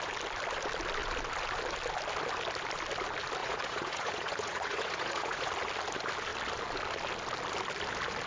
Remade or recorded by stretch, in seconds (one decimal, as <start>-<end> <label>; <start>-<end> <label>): 0.0-3.4 recorded; 3.4-5.5 remade; 5.5-8.3 recorded